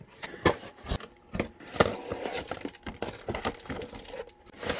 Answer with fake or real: fake